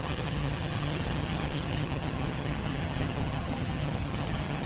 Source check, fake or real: fake